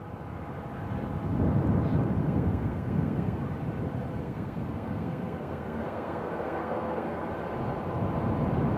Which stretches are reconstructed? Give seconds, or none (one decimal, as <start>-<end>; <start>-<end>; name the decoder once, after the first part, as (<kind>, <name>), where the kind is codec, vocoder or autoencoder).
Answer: 2.2-3.4 (codec, SNAC); 4.2-7.3